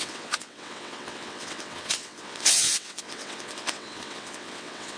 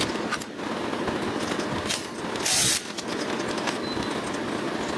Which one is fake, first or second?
first